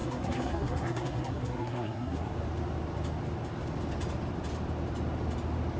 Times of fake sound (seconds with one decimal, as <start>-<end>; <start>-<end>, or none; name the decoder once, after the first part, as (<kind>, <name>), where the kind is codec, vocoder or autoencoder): 0.0-2.3 (codec, SNAC)